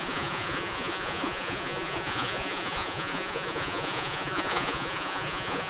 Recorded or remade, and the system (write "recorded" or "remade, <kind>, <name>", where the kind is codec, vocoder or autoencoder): remade, vocoder, Vocos